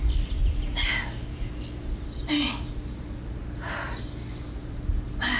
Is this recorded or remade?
recorded